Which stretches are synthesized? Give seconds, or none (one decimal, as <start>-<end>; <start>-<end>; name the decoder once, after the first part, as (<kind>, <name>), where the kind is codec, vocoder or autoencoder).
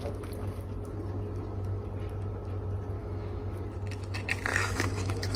3.0-3.6 (autoencoder, DAC-VAE); 4.5-5.4